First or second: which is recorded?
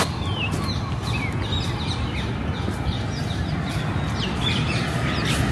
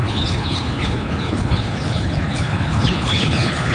first